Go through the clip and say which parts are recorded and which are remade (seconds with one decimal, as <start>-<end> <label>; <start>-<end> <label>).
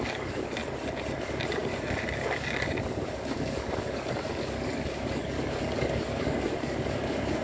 0.0-0.6 remade; 0.6-1.2 recorded; 1.2-7.4 remade